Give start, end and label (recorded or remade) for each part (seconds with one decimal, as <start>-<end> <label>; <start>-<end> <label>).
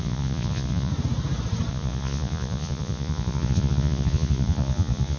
0.0-0.9 remade; 0.9-1.7 recorded; 1.7-5.2 remade